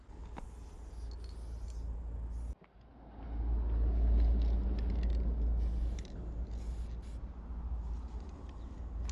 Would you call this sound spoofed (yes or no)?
no